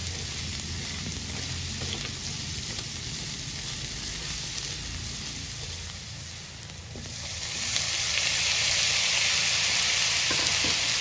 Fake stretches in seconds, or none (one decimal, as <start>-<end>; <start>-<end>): none